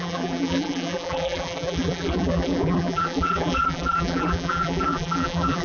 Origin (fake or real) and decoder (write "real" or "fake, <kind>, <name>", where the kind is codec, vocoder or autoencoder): fake, vocoder, BigVGAN v2